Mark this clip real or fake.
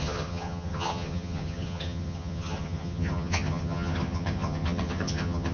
fake